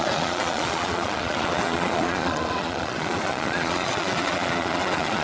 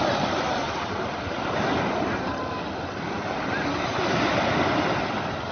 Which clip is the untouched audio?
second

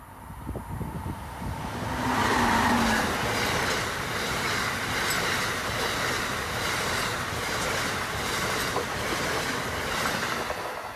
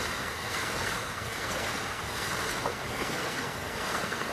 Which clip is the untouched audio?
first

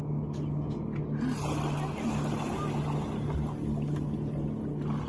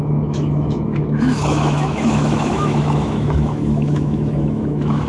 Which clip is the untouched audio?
first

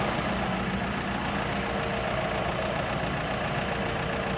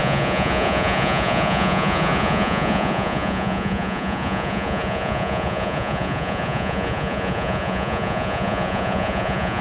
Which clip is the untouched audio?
first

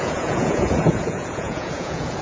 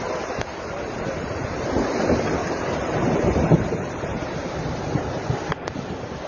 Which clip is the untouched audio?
second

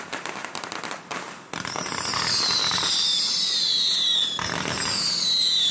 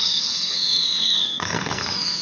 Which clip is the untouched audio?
first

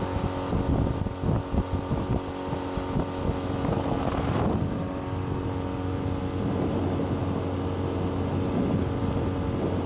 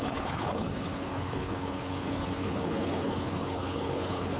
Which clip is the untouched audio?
first